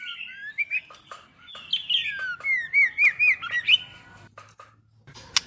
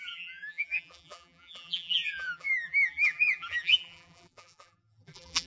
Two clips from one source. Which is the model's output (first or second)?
second